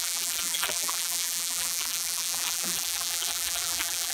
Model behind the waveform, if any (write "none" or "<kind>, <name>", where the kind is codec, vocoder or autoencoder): vocoder, BigVGAN v2